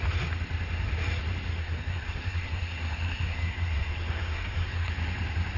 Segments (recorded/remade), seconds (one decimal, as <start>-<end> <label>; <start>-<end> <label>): 0.0-1.5 recorded; 1.5-4.9 remade; 4.9-5.6 recorded